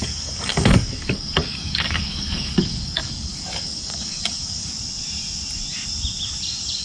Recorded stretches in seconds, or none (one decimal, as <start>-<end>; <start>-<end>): 4.7-6.8